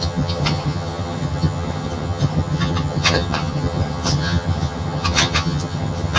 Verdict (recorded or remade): remade